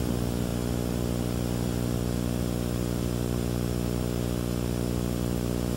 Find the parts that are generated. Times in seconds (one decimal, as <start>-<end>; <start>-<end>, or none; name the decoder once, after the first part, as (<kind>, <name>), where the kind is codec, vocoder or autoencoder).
none